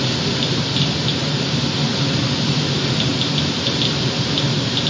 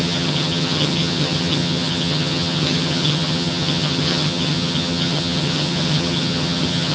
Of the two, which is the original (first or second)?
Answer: first